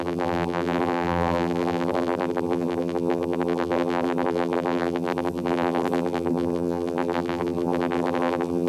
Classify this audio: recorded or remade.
remade